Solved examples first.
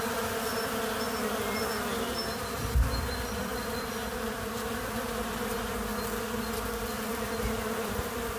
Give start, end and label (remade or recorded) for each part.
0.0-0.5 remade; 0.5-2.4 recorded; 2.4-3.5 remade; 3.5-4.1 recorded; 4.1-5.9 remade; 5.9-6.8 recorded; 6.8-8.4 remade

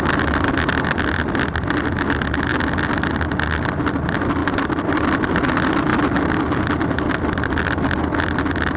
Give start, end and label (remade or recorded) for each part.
0.0-4.4 recorded; 4.4-5.0 remade; 5.0-5.9 recorded; 5.9-7.8 remade; 7.8-8.8 recorded

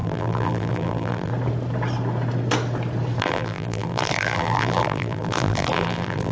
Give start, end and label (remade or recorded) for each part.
0.0-1.3 remade; 1.3-3.2 recorded; 3.2-6.3 remade

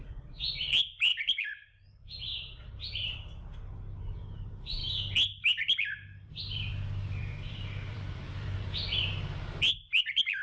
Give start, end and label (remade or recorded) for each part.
0.0-4.8 remade; 4.8-6.3 recorded; 6.3-10.4 remade

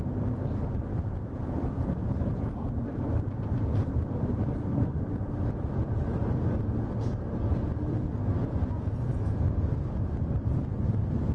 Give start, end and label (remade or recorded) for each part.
0.0-0.9 recorded; 0.9-3.4 remade; 3.4-3.8 recorded; 3.8-6.2 remade; 6.2-11.3 recorded

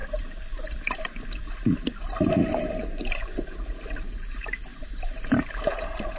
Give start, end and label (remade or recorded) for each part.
0.0-2.0 recorded; 2.0-6.2 remade

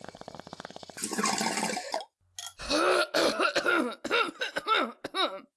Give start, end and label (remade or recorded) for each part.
0.0-5.6 recorded

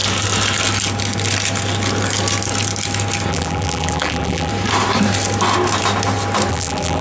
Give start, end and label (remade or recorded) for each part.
0.0-3.3 recorded; 3.3-4.5 remade; 4.5-6.5 recorded; 6.5-7.0 remade